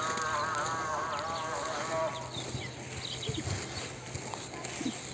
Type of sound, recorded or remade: recorded